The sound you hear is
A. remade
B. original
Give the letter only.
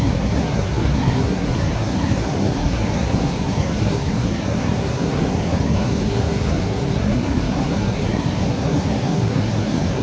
A